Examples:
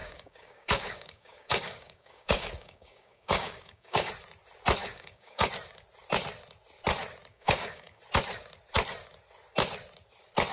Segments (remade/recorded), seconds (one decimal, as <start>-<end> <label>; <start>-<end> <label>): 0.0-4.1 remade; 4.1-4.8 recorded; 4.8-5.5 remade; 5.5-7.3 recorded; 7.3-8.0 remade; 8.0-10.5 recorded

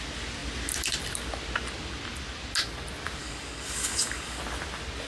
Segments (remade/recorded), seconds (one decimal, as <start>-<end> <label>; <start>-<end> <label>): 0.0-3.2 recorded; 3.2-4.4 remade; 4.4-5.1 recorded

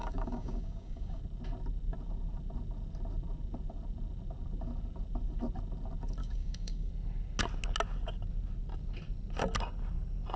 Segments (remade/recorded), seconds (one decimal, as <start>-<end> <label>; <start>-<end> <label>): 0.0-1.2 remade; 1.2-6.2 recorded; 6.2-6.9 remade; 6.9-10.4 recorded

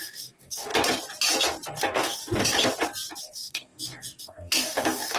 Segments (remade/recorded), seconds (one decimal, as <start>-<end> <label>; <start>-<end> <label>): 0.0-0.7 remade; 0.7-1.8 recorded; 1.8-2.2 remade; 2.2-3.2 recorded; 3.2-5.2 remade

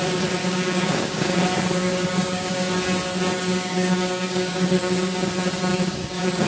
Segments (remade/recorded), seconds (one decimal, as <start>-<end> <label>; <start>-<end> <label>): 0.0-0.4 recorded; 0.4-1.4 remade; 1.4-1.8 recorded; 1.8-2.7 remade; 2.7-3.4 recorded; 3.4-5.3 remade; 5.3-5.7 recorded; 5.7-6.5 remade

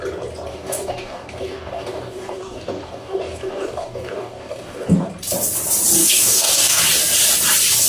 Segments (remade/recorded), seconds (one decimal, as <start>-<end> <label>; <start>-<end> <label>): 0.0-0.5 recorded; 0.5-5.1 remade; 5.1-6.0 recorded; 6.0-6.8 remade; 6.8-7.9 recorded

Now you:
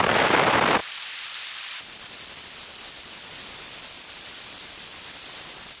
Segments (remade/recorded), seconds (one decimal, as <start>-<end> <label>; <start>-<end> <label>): 0.0-5.8 recorded